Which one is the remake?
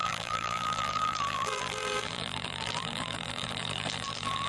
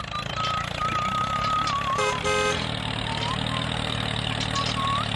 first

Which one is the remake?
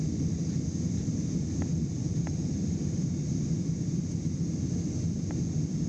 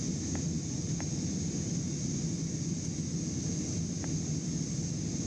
first